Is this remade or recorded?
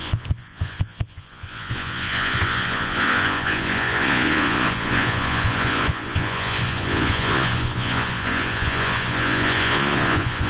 remade